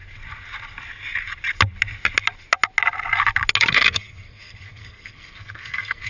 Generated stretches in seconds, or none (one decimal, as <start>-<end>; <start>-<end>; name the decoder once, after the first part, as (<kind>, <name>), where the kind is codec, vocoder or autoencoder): 3.7-6.1 (codec, SNAC)